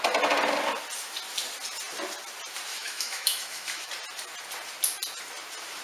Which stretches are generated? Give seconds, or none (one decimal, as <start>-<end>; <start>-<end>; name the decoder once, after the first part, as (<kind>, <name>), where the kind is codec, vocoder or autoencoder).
2.7-3.9 (autoencoder, DAC-VAE)